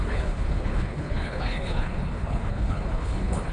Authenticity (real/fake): fake